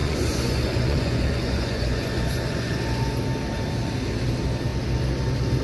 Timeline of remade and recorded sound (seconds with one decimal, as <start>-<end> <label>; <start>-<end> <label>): 0.0-3.2 remade; 3.2-5.6 recorded